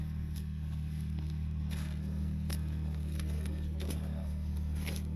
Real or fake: fake